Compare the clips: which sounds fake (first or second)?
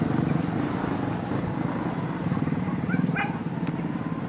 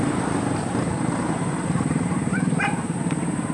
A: second